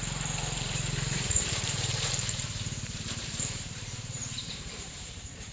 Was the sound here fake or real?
fake